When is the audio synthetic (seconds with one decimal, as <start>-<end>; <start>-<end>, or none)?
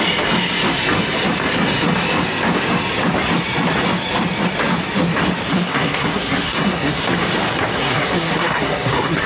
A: 5.5-7.1; 7.8-9.3